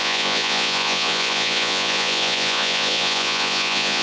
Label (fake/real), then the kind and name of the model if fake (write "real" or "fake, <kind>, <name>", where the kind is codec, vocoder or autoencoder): fake, vocoder, Vocos